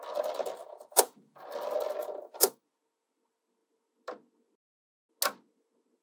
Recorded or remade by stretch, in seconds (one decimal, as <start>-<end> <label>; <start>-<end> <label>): 0.0-0.6 recorded; 0.6-1.5 remade; 1.5-2.0 recorded; 2.0-2.5 remade; 2.5-6.0 recorded